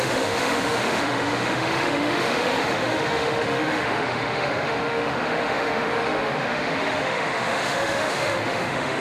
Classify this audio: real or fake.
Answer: fake